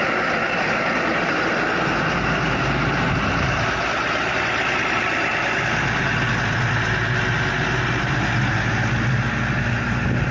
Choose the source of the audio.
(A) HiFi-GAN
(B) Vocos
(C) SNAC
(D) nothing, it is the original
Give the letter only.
D